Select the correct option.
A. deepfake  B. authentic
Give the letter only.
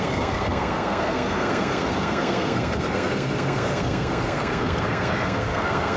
A